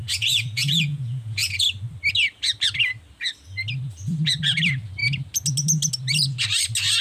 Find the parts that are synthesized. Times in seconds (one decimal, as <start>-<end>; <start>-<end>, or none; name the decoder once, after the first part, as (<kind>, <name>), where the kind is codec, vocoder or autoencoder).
0.0-1.6 (vocoder, Vocos)